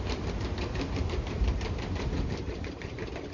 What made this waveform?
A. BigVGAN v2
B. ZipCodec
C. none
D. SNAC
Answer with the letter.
A